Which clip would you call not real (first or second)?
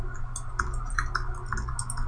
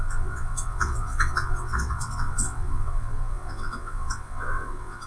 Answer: second